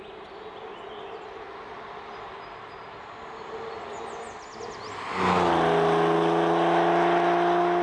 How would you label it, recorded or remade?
recorded